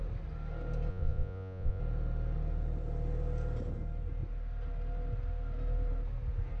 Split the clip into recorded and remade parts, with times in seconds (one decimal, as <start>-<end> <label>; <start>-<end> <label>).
0.0-0.9 recorded; 0.9-1.8 remade; 1.8-6.6 recorded